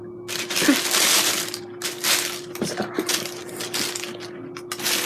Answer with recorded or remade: recorded